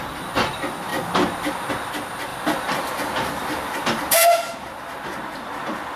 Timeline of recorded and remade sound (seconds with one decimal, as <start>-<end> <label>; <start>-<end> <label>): 0.0-0.9 recorded; 0.9-1.7 remade; 1.7-2.3 recorded; 2.3-6.0 remade

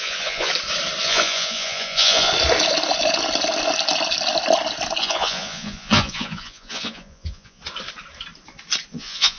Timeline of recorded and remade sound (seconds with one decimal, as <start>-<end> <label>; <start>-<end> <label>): 0.0-0.5 remade; 0.5-1.0 recorded; 1.0-2.3 remade; 2.3-5.0 recorded; 5.0-7.6 remade; 7.6-8.9 recorded; 8.9-9.4 remade

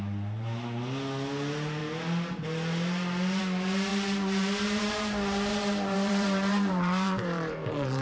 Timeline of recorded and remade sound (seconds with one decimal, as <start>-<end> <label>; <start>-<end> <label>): 0.0-3.9 recorded; 3.9-4.9 remade; 4.9-5.5 recorded; 5.5-8.0 remade

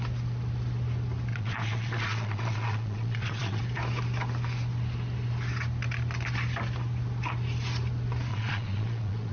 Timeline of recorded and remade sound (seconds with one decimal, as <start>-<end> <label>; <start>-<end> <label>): 0.0-1.3 recorded; 1.3-3.6 remade; 3.6-8.3 recorded; 8.3-9.3 remade